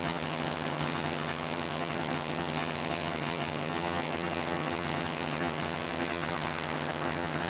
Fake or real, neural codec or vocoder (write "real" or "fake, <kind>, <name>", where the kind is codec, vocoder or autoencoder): fake, vocoder, HiFi-GAN